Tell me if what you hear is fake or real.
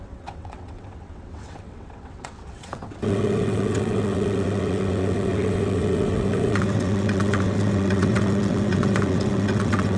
fake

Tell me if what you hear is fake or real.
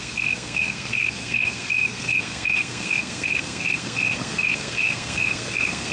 fake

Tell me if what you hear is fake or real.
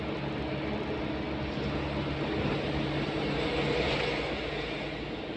real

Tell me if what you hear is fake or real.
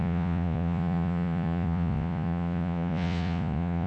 fake